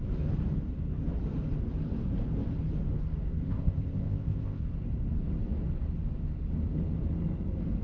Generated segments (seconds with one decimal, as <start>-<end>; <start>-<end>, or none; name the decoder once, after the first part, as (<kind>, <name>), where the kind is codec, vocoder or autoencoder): 3.4-4.6 (codec, ZipCodec)